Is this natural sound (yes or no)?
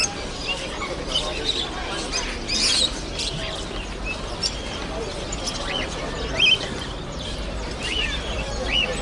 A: yes